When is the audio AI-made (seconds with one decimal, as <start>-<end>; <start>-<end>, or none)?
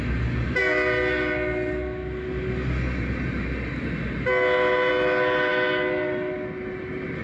none